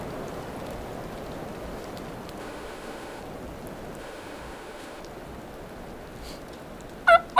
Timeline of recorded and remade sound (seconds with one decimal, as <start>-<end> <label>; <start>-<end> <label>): 0.0-2.4 recorded; 2.4-3.2 remade; 3.2-4.0 recorded; 4.0-5.0 remade; 5.0-7.4 recorded